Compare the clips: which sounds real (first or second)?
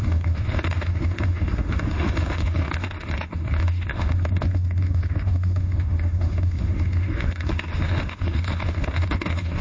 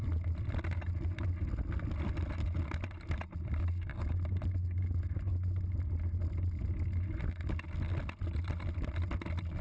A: second